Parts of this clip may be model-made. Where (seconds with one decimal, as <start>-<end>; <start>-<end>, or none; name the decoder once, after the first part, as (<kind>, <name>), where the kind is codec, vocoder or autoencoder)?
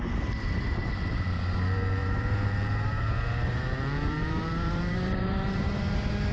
2.0-5.8 (vocoder, BigVGAN v2)